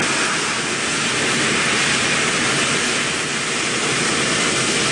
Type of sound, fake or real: real